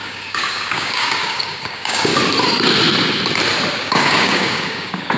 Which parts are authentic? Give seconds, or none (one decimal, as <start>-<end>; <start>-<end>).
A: 2.1-3.7